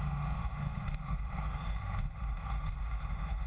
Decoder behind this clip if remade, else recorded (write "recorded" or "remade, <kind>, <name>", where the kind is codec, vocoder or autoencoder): remade, autoencoder, DAC-VAE